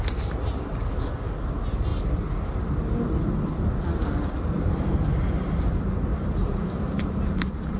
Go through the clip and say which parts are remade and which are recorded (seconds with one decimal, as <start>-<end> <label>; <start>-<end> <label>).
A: 0.0-6.1 recorded; 6.1-7.8 remade